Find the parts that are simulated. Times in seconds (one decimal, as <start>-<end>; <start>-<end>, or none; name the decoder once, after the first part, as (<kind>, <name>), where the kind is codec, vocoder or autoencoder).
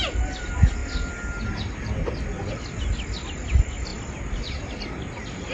none